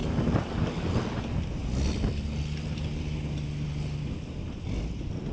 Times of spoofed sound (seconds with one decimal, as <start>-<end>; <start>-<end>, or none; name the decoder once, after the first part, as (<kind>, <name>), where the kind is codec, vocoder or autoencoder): none